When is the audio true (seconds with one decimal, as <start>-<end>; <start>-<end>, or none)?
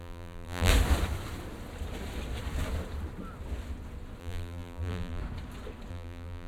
0.7-4.2; 5.2-5.9